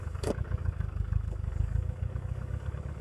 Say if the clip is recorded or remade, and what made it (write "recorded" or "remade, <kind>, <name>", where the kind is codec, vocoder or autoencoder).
remade, codec, DAC